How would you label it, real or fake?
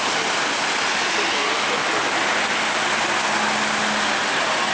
real